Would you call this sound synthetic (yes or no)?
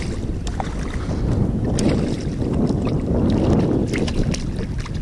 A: no